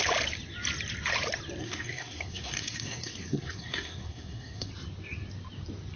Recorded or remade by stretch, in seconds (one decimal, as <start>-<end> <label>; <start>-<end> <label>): 0.0-1.6 recorded; 1.6-4.7 remade; 4.7-6.0 recorded